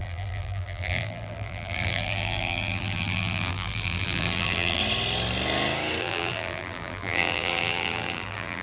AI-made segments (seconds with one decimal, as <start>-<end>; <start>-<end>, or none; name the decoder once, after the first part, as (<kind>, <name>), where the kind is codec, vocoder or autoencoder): 0.0-4.8 (vocoder, BigVGAN v2); 6.0-8.6